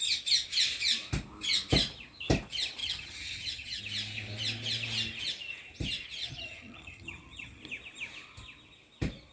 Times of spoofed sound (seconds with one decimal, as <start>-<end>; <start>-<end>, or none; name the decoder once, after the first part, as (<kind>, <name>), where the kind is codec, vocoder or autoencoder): 2.8-3.8 (vocoder, HiFi-GAN); 6.2-7.6

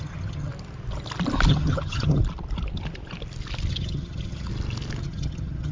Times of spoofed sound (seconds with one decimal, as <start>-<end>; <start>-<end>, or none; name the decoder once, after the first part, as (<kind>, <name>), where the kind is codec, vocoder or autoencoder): 0.0-0.5 (vocoder, HiFi-GAN); 1.5-2.2; 3.7-4.5; 5.0-5.7

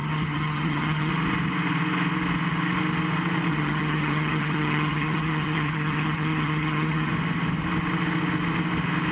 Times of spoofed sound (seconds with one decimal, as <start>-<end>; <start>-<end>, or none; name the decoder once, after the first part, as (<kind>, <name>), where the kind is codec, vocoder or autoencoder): 0.0-1.1 (vocoder, HiFi-GAN); 3.5-7.1

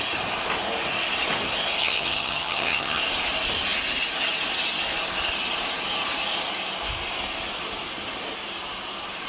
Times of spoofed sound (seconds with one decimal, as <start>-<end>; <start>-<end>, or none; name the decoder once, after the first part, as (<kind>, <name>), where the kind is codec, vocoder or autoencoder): 1.8-3.0 (vocoder, HiFi-GAN)

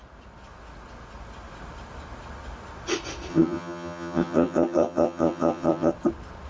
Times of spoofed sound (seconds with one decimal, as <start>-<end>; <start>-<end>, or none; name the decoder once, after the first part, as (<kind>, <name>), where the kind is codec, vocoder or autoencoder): 3.3-5.9 (vocoder, HiFi-GAN)

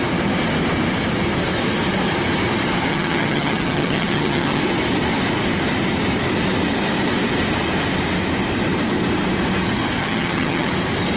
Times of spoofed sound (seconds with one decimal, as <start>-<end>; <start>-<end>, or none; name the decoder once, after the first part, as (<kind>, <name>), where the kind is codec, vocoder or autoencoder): 2.9-4.6 (vocoder, HiFi-GAN); 10.0-10.7

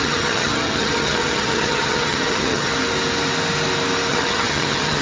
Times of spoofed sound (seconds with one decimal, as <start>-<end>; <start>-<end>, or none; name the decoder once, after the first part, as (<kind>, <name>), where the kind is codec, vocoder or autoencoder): 0.0-2.7 (vocoder, HiFi-GAN); 4.1-5.0